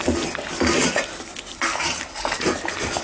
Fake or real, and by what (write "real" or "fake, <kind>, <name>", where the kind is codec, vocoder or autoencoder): real